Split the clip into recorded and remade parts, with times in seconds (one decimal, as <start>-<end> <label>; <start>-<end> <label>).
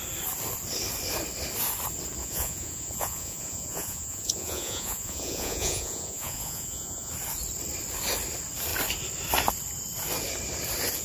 0.0-2.2 recorded; 2.2-7.1 remade; 7.1-11.0 recorded